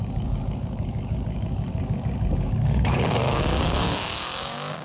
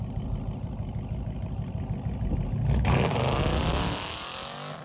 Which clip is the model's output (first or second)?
first